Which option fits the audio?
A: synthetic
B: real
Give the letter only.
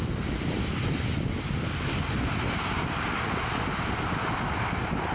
B